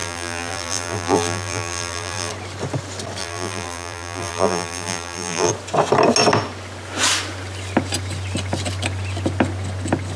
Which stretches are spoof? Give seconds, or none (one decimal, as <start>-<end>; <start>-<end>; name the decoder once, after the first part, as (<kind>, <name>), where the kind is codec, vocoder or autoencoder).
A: 0.0-2.3 (vocoder, BigVGAN v2); 3.2-5.5

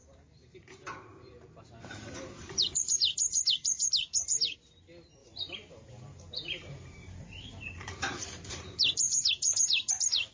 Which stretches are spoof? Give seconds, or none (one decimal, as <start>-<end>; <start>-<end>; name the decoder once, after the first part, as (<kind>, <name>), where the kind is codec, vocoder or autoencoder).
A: 0.0-4.8 (vocoder, BigVGAN v2); 5.2-9.9

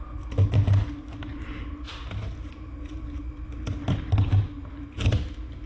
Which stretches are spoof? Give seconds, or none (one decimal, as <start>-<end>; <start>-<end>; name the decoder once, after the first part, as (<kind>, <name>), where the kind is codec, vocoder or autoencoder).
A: 1.3-3.2 (vocoder, BigVGAN v2)

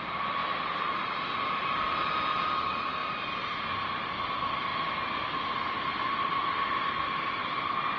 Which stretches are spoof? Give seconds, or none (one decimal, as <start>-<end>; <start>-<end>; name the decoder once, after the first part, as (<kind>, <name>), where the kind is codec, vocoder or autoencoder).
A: 0.0-4.7 (vocoder, BigVGAN v2); 6.0-8.0

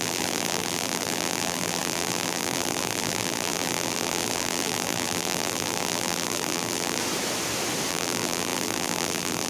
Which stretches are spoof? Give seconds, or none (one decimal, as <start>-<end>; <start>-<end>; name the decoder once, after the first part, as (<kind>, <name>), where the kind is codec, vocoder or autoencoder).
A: 0.0-7.0 (vocoder, BigVGAN v2); 7.9-9.5

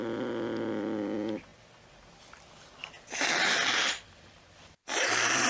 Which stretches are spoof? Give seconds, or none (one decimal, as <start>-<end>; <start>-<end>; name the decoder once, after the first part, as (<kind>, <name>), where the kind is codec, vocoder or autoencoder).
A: none

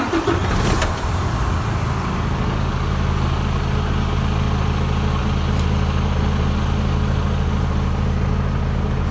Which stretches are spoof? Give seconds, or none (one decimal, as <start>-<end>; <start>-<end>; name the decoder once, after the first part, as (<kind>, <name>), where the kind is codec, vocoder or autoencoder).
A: none

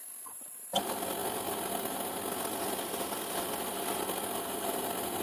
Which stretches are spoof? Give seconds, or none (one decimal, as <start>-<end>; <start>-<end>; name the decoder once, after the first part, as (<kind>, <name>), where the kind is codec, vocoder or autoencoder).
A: none